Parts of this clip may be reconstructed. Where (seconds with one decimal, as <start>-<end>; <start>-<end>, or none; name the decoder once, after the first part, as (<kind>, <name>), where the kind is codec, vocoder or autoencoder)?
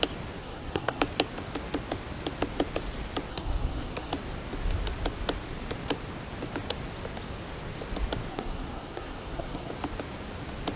0.4-1.0 (codec, SNAC); 3.3-4.1; 8.3-9.7